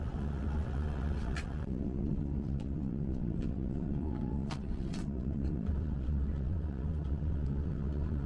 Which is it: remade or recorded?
remade